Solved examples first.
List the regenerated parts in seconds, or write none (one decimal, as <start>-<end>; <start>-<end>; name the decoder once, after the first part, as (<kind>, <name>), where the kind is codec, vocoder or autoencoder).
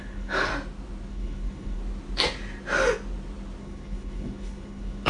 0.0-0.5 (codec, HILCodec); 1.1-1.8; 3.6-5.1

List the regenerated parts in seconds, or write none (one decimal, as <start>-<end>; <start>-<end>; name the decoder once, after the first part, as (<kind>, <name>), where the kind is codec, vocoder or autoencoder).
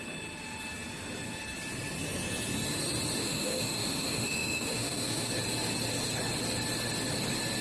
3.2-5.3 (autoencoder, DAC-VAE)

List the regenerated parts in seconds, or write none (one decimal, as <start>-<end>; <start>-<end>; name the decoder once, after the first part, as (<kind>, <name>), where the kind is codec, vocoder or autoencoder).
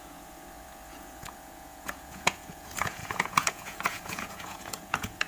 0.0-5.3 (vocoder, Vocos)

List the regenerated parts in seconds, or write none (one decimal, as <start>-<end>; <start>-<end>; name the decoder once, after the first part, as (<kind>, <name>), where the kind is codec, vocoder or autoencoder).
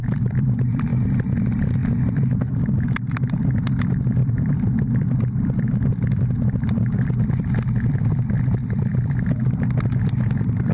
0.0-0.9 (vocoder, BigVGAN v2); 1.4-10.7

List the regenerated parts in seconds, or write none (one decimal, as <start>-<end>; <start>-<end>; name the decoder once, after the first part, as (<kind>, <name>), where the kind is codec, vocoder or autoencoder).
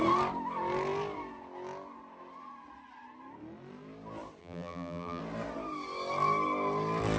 4.4-5.2 (vocoder, BigVGAN v2)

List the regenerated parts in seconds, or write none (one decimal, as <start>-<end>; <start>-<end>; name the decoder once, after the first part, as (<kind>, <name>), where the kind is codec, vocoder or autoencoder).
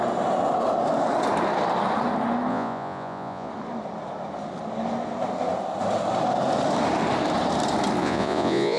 2.5-3.5 (vocoder, Vocos); 8.0-8.8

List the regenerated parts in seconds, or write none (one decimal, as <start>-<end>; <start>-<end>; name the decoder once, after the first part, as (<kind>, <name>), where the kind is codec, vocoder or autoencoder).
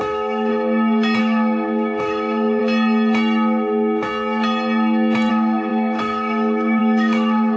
0.0-0.5 (autoencoder, DAC-VAE); 1.2-2.6; 5.3-7.6